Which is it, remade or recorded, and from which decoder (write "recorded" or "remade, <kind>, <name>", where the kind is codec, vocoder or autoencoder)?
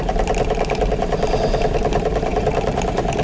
remade, vocoder, BigVGAN v2